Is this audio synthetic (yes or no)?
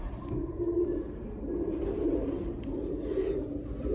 no